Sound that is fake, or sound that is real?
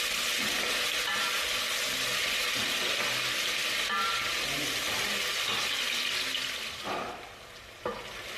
real